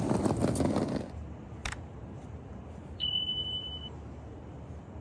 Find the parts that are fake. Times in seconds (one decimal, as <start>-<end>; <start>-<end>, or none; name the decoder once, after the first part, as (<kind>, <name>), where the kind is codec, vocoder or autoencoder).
none